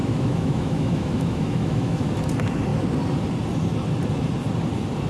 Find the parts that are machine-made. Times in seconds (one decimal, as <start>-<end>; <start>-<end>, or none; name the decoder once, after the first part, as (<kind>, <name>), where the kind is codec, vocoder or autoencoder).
0.0-2.1 (autoencoder, DAC-VAE)